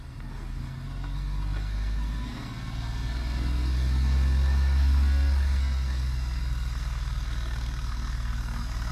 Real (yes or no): no